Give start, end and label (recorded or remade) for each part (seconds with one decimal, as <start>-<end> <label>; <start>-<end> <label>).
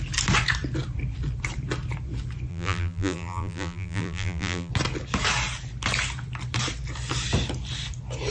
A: 0.0-2.5 recorded; 2.5-4.7 remade; 4.7-8.3 recorded